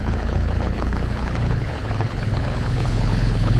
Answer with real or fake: fake